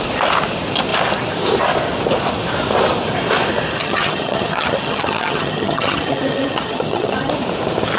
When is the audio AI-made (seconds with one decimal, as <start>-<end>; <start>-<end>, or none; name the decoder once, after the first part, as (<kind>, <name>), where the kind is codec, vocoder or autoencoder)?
3.8-7.3 (vocoder, HiFi-GAN)